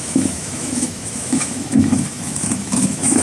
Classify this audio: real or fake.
fake